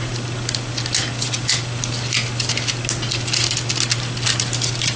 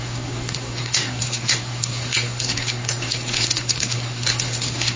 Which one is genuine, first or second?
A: first